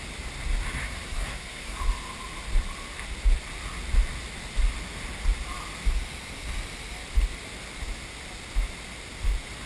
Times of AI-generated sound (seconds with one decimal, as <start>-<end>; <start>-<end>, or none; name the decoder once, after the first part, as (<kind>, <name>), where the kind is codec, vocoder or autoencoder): 0.8-1.8 (codec, SNAC)